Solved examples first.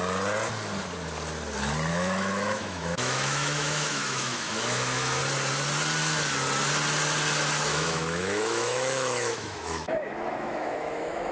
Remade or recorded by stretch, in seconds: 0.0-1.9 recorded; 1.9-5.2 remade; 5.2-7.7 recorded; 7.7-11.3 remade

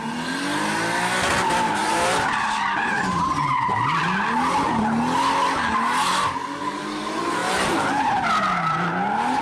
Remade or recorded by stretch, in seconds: 0.0-1.8 recorded; 1.8-3.3 remade; 3.3-7.4 recorded; 7.4-8.1 remade; 8.1-9.4 recorded